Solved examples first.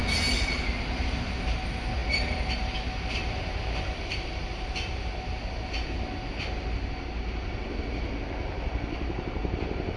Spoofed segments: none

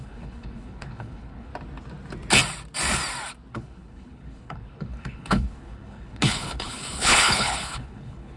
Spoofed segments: 0.0-1.5 (codec, HILCodec); 3.5-8.4

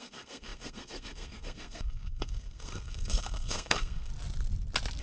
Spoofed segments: 0.0-4.1 (codec, SNAC)